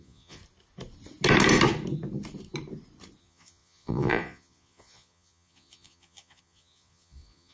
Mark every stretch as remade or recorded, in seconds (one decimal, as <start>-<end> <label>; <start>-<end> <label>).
0.0-0.4 remade; 0.4-3.2 recorded; 3.2-7.5 remade